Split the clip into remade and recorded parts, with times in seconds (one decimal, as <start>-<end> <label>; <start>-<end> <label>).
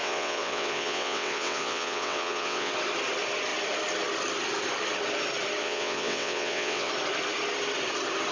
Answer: 0.0-2.7 remade; 2.7-5.6 recorded; 5.6-6.9 remade; 6.9-8.3 recorded